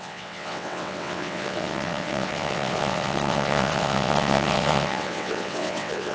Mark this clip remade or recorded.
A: remade